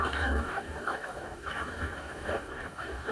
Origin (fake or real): fake